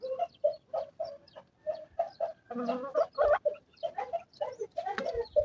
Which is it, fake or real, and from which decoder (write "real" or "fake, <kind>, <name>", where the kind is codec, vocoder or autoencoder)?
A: real